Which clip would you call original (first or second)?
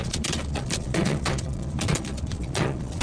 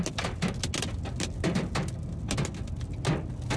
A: second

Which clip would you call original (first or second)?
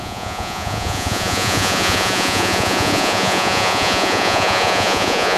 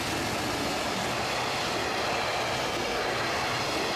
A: second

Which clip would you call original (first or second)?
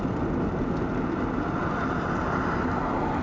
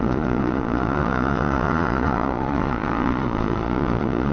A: first